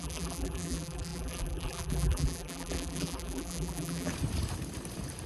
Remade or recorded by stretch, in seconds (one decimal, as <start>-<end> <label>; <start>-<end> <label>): 0.0-4.1 remade; 4.1-5.3 recorded